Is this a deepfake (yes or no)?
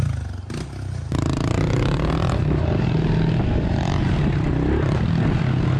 no